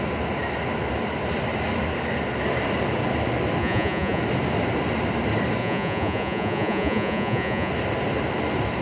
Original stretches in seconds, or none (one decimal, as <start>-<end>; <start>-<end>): 0.0-3.6; 4.2-5.6; 7.7-8.8